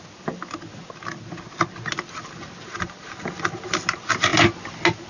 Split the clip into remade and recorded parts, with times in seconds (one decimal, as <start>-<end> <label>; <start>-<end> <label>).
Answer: 0.0-5.1 recorded